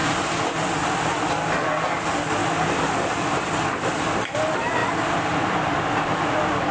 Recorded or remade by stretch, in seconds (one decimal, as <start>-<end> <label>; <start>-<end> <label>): 0.0-6.7 recorded